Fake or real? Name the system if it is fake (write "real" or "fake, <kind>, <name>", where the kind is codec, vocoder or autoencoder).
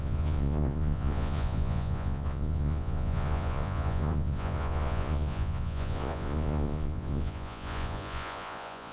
fake, vocoder, Vocos